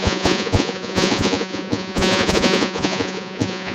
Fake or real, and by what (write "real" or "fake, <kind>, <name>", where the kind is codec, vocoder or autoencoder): fake, vocoder, Vocos